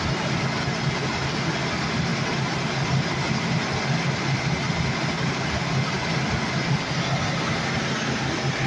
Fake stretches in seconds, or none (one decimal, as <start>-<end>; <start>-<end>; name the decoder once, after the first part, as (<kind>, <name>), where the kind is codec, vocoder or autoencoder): none